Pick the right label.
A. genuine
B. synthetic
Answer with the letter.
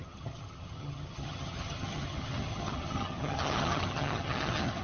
B